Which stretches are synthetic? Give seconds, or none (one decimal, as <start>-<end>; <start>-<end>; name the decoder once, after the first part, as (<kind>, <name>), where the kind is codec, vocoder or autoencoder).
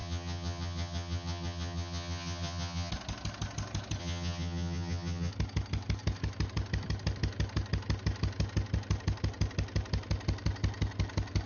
0.0-2.9 (vocoder, HiFi-GAN); 4.0-5.3